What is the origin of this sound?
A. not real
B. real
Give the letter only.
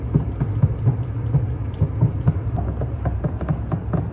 A